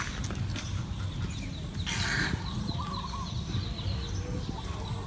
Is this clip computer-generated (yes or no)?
no